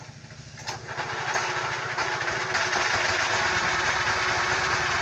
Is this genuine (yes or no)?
yes